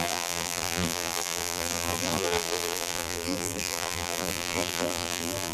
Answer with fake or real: fake